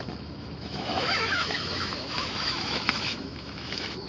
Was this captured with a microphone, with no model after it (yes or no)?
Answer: no